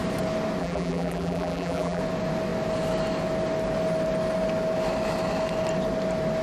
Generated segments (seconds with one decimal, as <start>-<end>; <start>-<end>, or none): 0.6-2.0